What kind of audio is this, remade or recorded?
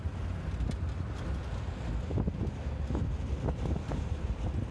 recorded